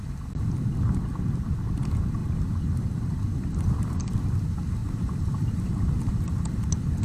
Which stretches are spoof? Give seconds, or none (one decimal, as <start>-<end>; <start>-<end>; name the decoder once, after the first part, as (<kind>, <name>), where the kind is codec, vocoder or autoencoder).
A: 4.8-6.6 (vocoder, BigVGAN v2)